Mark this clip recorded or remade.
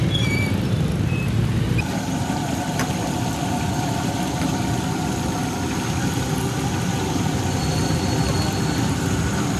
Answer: recorded